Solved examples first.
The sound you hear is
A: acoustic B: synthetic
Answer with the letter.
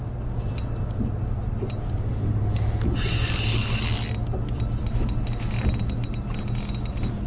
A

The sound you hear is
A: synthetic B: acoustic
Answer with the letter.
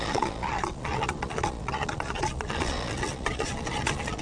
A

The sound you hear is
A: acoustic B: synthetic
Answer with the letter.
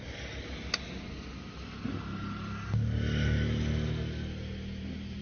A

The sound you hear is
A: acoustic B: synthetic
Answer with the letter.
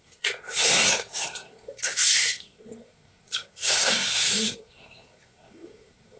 B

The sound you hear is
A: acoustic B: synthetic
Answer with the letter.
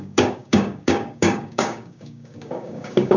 B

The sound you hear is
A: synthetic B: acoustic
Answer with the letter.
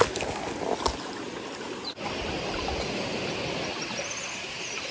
B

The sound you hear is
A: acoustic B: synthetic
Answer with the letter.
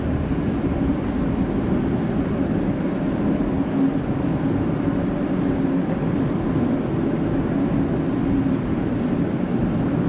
A